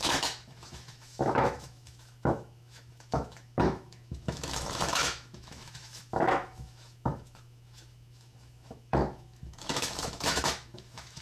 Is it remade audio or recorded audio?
remade